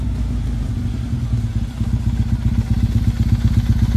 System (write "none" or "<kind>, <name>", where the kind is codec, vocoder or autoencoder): none